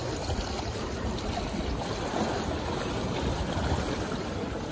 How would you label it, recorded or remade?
recorded